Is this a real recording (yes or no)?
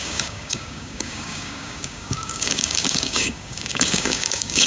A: no